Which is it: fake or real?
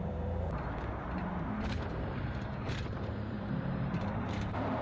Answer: fake